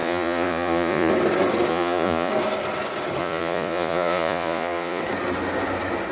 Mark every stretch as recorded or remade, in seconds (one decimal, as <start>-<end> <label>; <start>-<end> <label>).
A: 0.0-1.1 remade; 1.1-1.7 recorded; 1.7-2.3 remade; 2.3-3.2 recorded; 3.2-5.0 remade; 5.0-6.1 recorded